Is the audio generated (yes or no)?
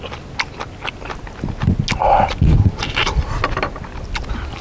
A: no